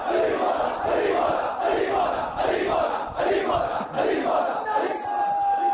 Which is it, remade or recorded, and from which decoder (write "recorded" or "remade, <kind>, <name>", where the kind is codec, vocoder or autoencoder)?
recorded